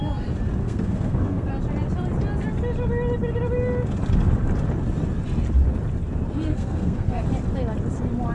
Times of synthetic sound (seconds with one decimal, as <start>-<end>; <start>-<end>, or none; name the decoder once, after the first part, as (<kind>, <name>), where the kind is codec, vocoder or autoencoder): 0.6-1.5 (codec, SNAC); 6.5-7.2